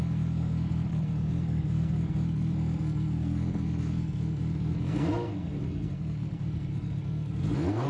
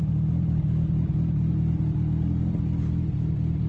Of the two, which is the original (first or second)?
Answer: second